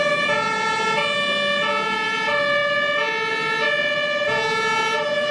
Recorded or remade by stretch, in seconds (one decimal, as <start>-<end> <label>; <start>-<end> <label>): 0.0-5.3 recorded